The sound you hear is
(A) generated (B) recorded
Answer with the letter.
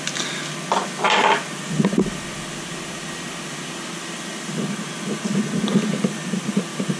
B